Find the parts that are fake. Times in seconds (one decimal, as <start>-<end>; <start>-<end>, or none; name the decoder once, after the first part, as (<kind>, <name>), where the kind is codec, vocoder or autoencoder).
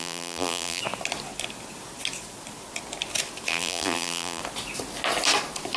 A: 0.0-0.8 (vocoder, BigVGAN v2); 3.5-4.4